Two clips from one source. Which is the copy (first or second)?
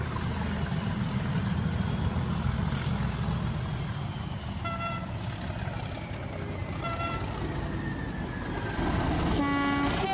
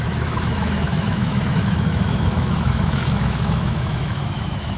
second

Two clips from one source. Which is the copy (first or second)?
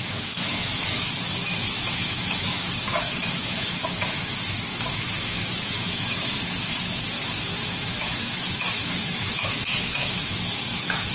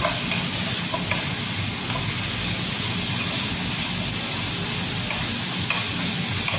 first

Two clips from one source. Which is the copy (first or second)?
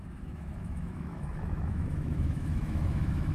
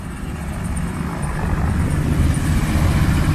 first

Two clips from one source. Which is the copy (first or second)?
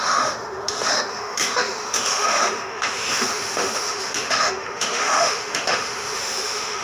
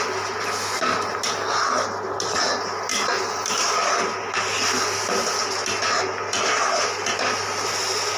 first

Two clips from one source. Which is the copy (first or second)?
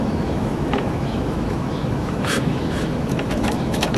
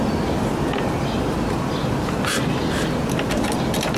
first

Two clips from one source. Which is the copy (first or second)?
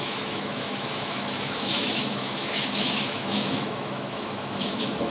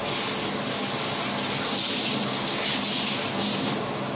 first